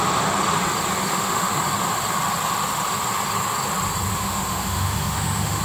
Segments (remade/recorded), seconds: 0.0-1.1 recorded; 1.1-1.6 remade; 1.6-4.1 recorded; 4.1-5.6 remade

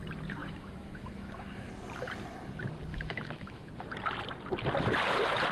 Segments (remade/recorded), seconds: 0.0-0.4 recorded; 0.4-1.7 remade; 1.7-2.9 recorded; 2.9-3.7 remade; 3.7-5.5 recorded